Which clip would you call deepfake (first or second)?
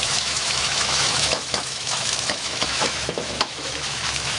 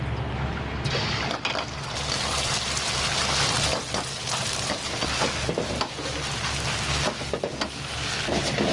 first